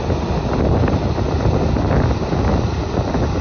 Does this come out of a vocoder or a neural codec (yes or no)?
no